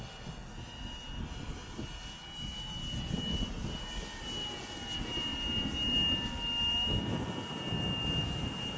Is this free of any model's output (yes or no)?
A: yes